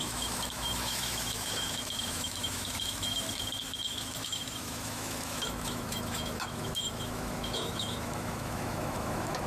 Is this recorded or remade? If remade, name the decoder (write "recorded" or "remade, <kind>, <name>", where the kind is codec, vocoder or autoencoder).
remade, autoencoder, DAC-VAE